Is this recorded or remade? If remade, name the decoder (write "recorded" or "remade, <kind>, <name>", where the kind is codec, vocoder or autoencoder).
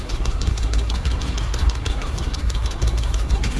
remade, codec, SNAC